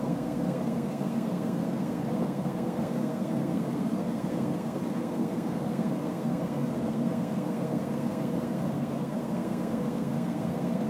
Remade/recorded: remade